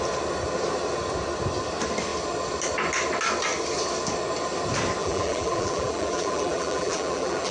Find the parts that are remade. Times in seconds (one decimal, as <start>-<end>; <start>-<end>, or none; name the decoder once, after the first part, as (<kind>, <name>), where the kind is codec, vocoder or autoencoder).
5.0-7.5 (vocoder, BigVGAN v2)